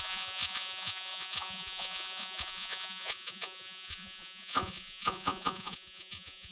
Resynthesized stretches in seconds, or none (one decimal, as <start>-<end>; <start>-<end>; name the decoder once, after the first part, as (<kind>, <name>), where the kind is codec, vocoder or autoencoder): 0.0-6.5 (vocoder, Vocos)